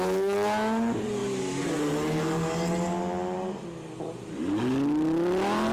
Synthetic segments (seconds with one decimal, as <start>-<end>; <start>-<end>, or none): none